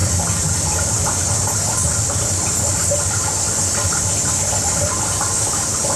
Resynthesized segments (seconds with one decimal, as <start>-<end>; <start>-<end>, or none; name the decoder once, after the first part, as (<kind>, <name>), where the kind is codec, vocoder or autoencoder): 0.9-1.8 (vocoder, BigVGAN v2); 5.4-6.0